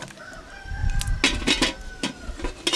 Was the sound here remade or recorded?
recorded